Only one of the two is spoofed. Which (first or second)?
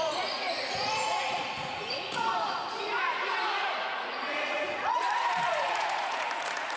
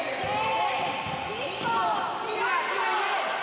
first